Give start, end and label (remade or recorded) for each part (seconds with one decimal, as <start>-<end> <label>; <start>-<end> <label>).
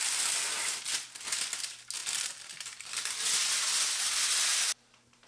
0.0-4.5 recorded; 4.5-5.3 remade